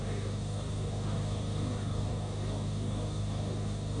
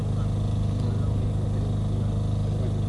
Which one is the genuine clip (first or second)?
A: second